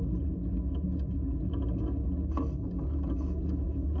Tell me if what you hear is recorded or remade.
recorded